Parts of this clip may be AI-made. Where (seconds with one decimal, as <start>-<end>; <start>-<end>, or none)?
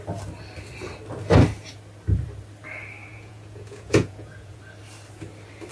3.1-4.6